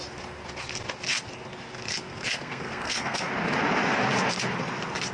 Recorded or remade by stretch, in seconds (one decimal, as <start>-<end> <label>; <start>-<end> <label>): 0.0-2.0 recorded; 2.0-3.3 remade; 3.3-5.1 recorded